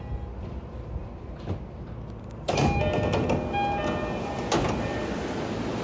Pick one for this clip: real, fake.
real